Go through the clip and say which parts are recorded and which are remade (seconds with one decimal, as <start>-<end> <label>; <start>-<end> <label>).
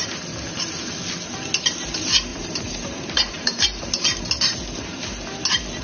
0.0-2.3 recorded; 2.3-4.2 remade; 4.2-5.8 recorded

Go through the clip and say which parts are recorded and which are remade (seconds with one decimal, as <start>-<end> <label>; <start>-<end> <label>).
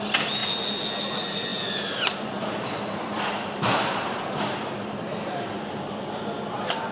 0.0-1.5 recorded; 1.5-4.2 remade; 4.2-6.9 recorded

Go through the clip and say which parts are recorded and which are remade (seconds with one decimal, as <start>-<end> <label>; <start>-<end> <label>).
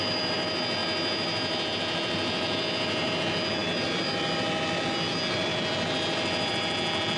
0.0-7.2 recorded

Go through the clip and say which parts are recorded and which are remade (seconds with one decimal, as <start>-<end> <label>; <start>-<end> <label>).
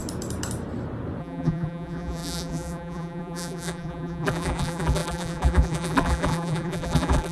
0.0-1.2 recorded; 1.2-7.3 remade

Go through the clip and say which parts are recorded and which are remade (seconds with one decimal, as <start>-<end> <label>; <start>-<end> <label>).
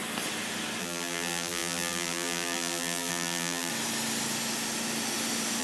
0.0-0.8 recorded; 0.8-3.7 remade; 3.7-5.6 recorded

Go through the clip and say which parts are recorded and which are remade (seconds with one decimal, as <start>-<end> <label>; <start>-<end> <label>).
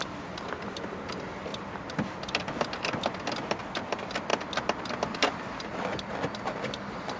0.0-1.5 recorded; 1.5-3.2 remade; 3.2-4.3 recorded; 4.3-4.8 remade; 4.8-7.2 recorded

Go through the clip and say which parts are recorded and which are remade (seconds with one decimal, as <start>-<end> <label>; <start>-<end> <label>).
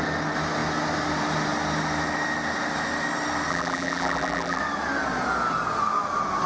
0.0-3.5 recorded; 3.5-4.6 remade; 4.6-6.5 recorded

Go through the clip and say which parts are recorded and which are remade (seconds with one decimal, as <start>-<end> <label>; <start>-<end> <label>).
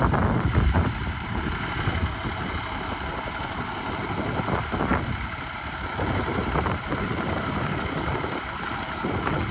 0.0-4.9 recorded; 4.9-8.7 remade; 8.7-9.5 recorded